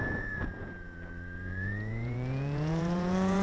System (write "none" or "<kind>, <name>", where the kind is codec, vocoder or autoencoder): vocoder, Vocos